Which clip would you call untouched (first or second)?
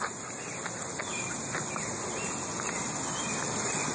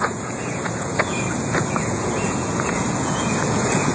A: first